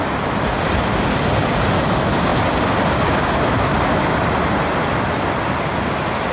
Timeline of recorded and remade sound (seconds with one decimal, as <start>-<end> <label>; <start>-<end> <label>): 0.0-6.3 recorded